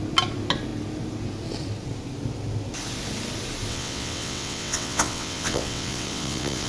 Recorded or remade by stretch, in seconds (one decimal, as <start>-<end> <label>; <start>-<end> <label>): 0.0-3.7 recorded; 3.7-6.7 remade